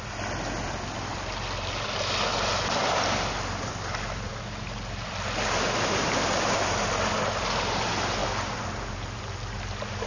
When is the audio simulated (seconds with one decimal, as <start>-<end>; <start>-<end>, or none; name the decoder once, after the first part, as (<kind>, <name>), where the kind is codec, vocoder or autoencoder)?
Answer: none